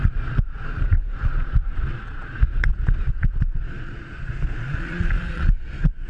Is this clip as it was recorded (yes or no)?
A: no